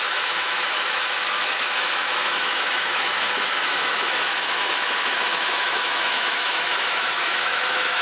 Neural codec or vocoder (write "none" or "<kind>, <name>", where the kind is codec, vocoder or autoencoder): autoencoder, DAC-VAE